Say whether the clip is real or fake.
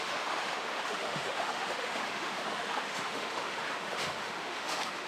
fake